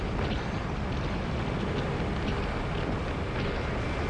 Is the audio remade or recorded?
recorded